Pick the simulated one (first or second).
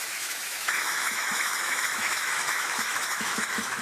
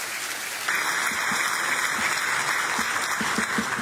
first